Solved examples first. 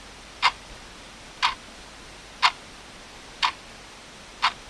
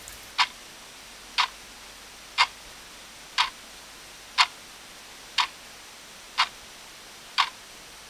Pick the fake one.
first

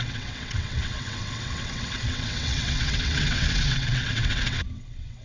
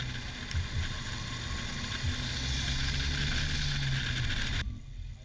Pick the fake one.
first